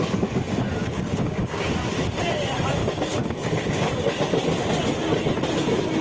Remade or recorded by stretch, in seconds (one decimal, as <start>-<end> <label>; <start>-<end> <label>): 0.0-0.8 recorded; 0.8-1.7 remade; 1.7-2.8 recorded; 2.8-3.9 remade; 3.9-6.0 recorded